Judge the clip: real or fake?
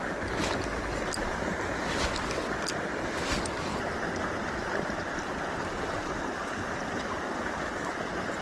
real